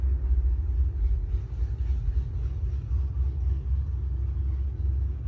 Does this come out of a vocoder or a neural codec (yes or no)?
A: no